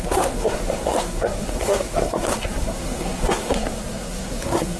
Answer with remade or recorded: remade